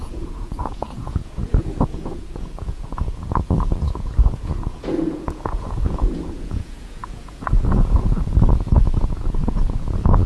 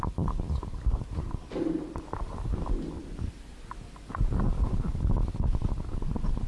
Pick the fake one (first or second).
first